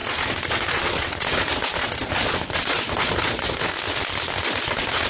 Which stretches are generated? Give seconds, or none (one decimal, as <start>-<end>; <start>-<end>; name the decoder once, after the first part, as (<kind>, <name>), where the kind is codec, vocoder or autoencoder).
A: 0.0-3.7 (vocoder, Vocos); 4.4-5.1